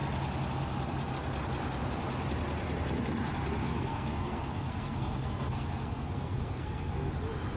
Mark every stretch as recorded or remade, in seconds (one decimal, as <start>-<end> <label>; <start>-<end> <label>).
0.0-3.6 recorded; 3.6-7.1 remade; 7.1-7.6 recorded